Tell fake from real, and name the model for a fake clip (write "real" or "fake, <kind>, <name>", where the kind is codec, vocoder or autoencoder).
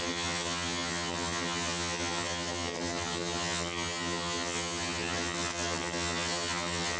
fake, vocoder, HiFi-GAN